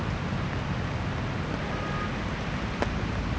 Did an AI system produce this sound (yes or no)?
no